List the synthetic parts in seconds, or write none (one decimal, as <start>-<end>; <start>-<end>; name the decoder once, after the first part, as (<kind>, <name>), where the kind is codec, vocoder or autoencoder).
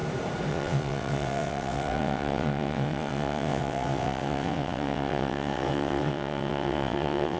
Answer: 0.5-7.4 (vocoder, WaveNeXt)